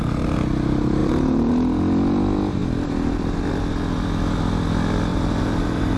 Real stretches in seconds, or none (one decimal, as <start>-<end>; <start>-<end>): 0.0-1.0; 1.5-5.1